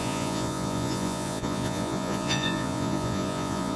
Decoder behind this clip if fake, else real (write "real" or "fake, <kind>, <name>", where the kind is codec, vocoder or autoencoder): fake, vocoder, Vocos